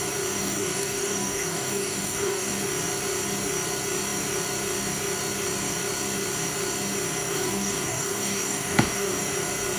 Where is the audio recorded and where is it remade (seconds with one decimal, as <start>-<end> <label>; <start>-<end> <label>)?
0.0-0.4 recorded; 0.4-2.5 remade; 2.5-7.3 recorded; 7.3-9.2 remade; 9.2-9.8 recorded